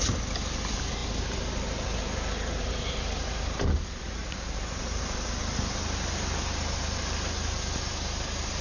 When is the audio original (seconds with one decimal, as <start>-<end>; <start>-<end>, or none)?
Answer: 0.0-4.2; 5.5-8.6